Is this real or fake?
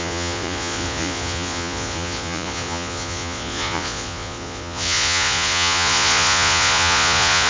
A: fake